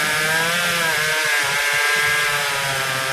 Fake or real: real